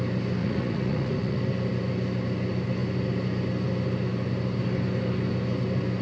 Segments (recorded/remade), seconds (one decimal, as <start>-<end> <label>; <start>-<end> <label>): 0.0-0.4 recorded; 0.4-1.4 remade; 1.4-6.0 recorded